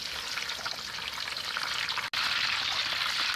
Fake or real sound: real